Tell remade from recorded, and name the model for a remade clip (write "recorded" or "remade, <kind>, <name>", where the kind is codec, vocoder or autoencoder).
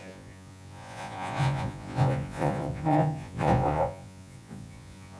remade, vocoder, Vocos